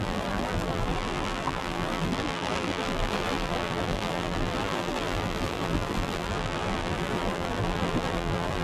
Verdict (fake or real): fake